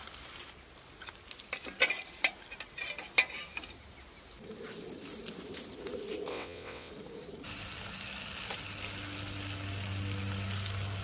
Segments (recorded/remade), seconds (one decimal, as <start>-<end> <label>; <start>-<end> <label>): 0.0-6.3 recorded; 6.3-6.9 remade; 6.9-11.0 recorded